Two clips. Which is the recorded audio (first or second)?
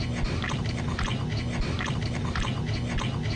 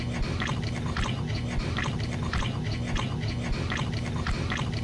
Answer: first